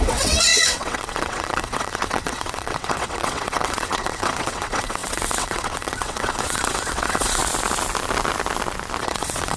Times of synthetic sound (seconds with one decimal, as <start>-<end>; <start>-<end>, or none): 0.0-7.4; 9.0-9.6